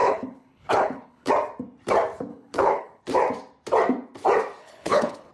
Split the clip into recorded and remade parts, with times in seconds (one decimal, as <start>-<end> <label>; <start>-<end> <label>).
0.0-1.3 remade; 1.3-2.3 recorded; 2.3-3.0 remade; 3.0-4.6 recorded; 4.6-5.3 remade